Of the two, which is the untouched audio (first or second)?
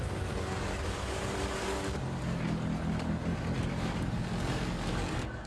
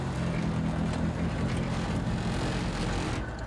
second